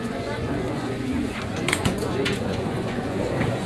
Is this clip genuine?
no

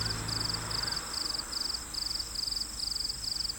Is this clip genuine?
yes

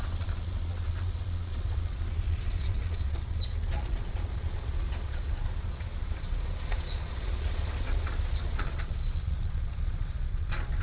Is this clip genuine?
no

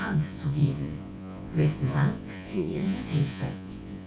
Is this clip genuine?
no